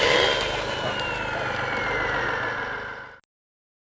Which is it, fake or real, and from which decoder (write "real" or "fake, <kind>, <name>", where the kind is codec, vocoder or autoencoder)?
real